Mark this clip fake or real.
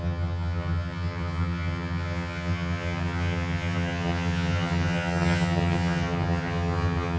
fake